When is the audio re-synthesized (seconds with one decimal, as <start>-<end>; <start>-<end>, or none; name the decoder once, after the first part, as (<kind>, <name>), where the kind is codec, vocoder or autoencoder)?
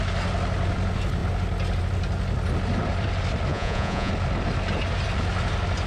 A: 3.5-4.1 (vocoder, Vocos)